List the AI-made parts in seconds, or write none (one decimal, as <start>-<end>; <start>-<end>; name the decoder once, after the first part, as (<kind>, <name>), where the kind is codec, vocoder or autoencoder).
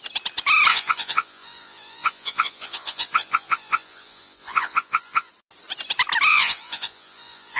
0.7-5.3 (vocoder, Vocos); 6.3-7.6